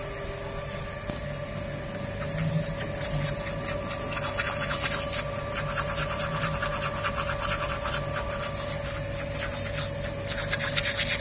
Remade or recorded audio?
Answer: recorded